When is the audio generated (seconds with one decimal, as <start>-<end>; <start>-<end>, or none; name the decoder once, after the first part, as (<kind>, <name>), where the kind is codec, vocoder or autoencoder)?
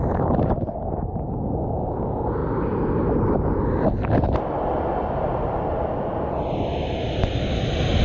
none